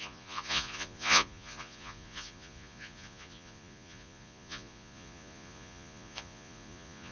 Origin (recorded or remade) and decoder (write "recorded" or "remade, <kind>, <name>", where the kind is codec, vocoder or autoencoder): remade, vocoder, Vocos